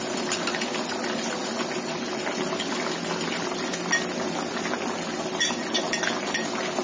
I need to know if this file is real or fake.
real